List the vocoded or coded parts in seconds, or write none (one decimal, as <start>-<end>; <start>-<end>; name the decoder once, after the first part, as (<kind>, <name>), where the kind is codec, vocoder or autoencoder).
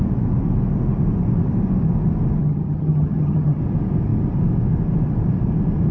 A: 2.4-3.6 (vocoder, HiFi-GAN)